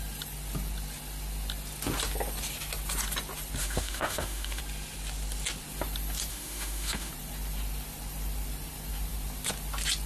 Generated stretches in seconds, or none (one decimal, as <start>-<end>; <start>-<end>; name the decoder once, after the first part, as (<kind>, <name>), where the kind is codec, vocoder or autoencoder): 3.6-4.6 (autoencoder, DAC-VAE); 6.3-7.1